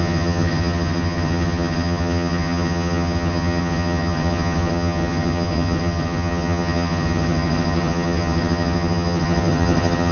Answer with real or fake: fake